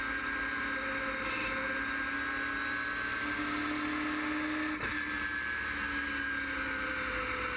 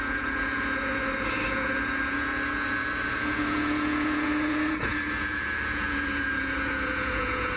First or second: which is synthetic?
second